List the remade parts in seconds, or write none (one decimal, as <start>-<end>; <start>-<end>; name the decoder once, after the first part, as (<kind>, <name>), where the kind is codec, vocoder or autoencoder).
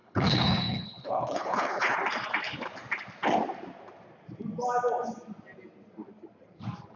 0.0-2.0 (codec, HILCodec)